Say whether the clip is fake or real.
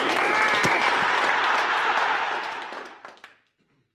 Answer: real